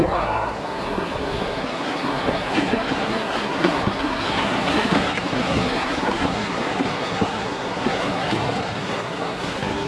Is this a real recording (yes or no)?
no